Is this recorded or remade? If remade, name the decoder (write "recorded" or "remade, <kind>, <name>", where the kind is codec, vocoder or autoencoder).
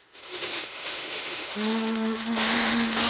remade, autoencoder, DAC-VAE